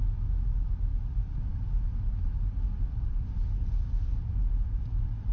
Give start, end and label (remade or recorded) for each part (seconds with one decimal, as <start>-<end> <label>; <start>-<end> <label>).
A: 0.0-0.9 recorded; 0.9-1.5 remade; 1.5-5.3 recorded